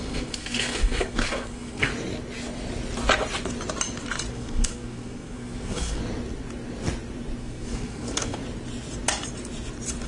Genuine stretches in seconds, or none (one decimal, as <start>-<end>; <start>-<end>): 1.9-4.3; 6.0-7.4; 8.4-10.1